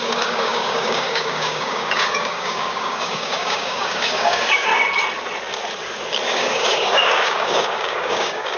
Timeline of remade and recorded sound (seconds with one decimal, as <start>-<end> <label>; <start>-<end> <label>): 0.0-4.7 remade; 4.7-6.3 recorded; 6.3-8.6 remade